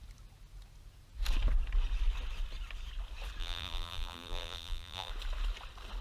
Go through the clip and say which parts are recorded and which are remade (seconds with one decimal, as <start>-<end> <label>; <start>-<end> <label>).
0.0-3.4 recorded; 3.4-5.1 remade; 5.1-6.0 recorded